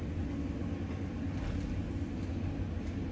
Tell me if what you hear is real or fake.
real